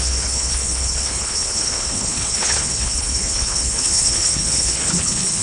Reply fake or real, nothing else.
fake